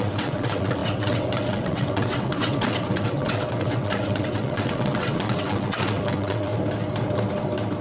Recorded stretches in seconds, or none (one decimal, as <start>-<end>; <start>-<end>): 6.5-7.8